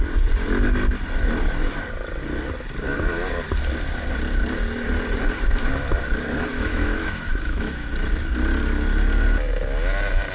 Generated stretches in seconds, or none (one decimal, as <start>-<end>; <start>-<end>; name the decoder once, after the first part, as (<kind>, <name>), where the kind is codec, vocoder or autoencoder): 6.5-7.9 (autoencoder, DAC-VAE)